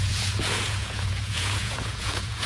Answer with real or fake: fake